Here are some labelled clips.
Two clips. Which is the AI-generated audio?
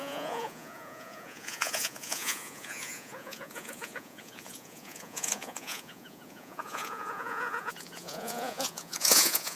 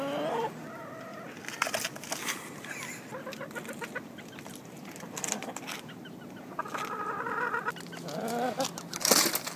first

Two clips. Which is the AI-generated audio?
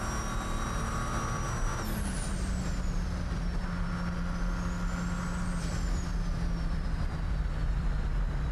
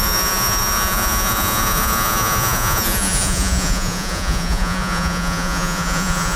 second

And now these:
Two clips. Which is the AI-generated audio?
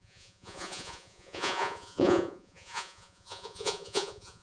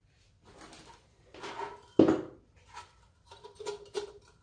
first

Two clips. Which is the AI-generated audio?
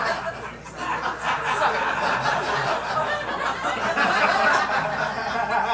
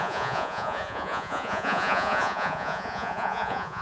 second